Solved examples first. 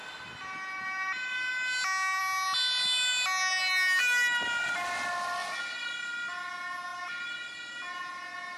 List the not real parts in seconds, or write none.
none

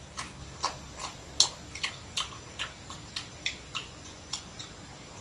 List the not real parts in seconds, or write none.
3.8-4.6 (vocoder, Vocos)

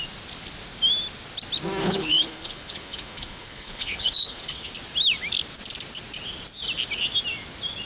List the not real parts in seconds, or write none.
1.8-4.7 (codec, HILCodec)

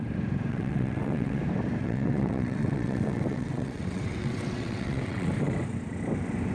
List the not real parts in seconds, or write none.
0.5-1.4 (vocoder, WaveNeXt); 1.8-5.3

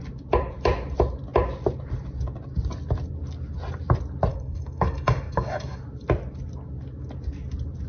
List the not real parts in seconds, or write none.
4.3-5.8 (codec, DAC)